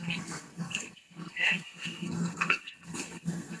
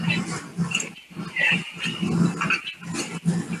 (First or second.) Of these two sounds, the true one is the second